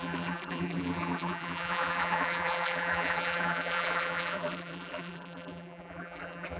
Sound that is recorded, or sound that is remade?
remade